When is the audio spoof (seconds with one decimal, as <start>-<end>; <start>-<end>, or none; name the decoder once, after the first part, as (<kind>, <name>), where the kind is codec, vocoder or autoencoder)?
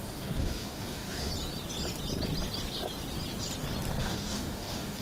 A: 0.0-1.3 (codec, DAC); 4.0-5.0